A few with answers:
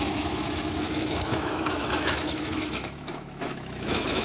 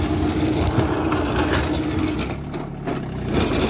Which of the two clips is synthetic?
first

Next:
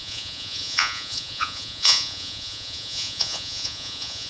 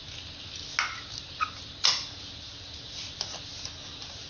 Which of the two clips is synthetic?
first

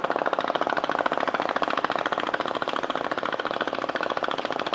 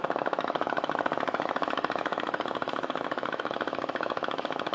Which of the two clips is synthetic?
second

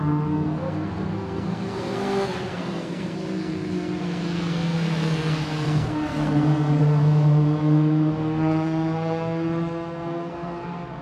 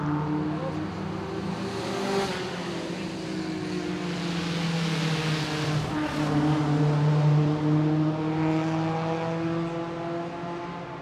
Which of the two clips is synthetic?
first